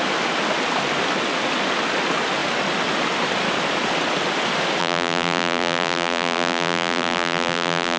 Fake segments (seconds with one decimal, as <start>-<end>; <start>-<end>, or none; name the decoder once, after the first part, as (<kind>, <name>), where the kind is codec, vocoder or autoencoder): 4.8-8.0 (vocoder, BigVGAN v2)